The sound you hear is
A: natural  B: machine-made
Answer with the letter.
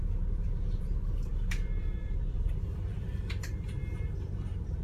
B